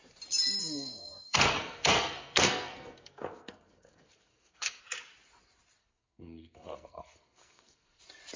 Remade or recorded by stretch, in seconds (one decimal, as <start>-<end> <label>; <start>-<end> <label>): 0.0-0.6 recorded; 0.6-4.8 remade; 4.8-5.8 recorded; 5.8-8.0 remade; 8.0-8.4 recorded